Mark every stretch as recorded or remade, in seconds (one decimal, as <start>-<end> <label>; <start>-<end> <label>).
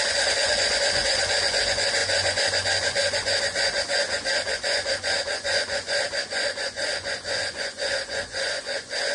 0.0-9.1 remade